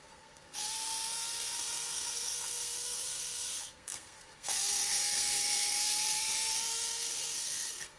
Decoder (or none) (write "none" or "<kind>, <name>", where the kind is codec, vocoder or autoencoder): codec, SNAC